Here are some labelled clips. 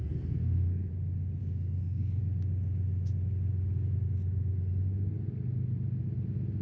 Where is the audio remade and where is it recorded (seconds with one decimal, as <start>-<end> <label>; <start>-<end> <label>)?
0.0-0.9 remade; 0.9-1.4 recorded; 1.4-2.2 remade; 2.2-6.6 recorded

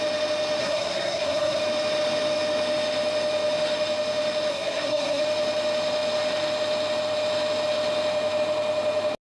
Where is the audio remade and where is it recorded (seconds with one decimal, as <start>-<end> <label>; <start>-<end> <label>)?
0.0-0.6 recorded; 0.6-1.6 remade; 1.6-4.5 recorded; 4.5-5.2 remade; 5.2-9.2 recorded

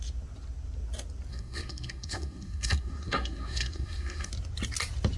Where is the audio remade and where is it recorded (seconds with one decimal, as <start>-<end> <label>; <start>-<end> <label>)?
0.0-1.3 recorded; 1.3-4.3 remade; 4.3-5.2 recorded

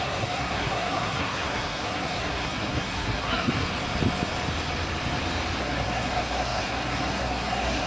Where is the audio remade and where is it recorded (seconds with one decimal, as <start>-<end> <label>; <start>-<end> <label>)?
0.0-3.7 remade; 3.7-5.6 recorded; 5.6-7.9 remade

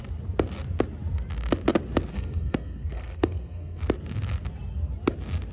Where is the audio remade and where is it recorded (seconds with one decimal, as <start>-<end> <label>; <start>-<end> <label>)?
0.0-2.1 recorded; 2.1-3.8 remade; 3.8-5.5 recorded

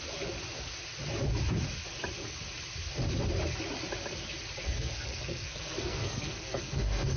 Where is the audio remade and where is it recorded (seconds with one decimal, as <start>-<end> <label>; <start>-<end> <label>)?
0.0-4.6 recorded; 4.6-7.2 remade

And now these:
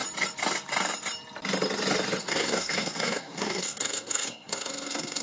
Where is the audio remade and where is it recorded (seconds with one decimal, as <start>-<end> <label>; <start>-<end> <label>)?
0.0-2.2 recorded; 2.2-5.2 remade

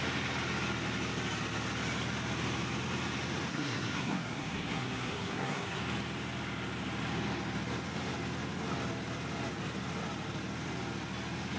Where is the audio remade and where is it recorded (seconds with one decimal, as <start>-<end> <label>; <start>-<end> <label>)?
0.0-3.5 recorded; 3.5-5.8 remade; 5.8-11.6 recorded